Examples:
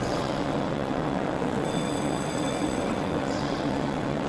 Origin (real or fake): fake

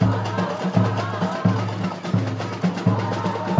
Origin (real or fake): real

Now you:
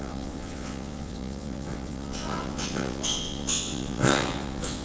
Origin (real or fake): fake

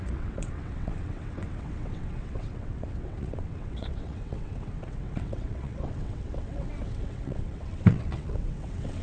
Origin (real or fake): fake